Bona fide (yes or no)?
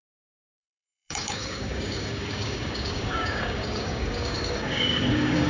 no